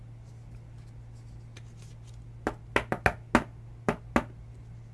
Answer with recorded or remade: recorded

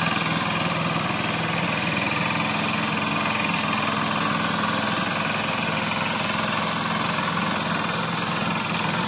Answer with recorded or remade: recorded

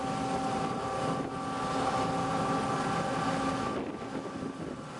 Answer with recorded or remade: recorded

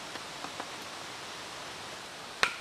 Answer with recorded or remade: recorded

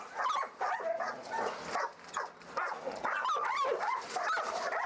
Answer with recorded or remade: recorded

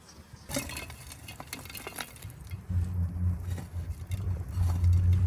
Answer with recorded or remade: recorded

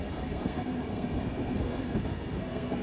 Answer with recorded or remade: remade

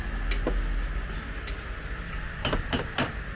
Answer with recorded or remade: recorded